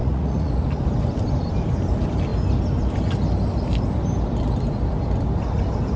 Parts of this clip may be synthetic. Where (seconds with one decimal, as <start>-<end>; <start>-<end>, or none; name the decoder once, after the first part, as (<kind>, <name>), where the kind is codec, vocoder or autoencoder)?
0.0-0.5 (vocoder, Vocos)